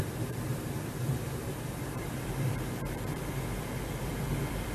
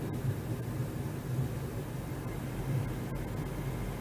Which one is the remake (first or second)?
first